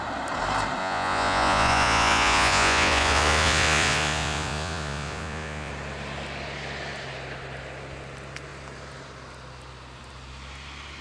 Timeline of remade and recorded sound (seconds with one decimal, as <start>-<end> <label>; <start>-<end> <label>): 0.0-0.8 recorded; 0.8-5.7 remade; 5.7-11.0 recorded